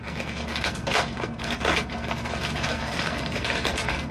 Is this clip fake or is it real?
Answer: fake